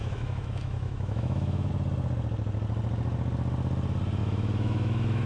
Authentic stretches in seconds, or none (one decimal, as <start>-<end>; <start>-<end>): 1.7-4.2